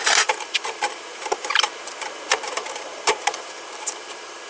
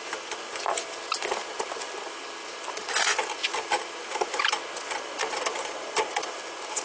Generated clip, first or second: first